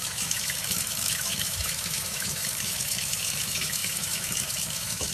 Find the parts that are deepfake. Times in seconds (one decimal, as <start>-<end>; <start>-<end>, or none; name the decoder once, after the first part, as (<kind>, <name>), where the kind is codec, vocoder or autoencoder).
0.0-5.1 (autoencoder, DAC-VAE)